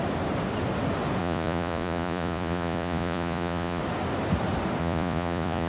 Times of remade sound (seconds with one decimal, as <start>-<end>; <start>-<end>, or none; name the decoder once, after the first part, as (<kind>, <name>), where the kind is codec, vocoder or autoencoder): 1.2-3.8 (vocoder, Vocos); 4.8-5.7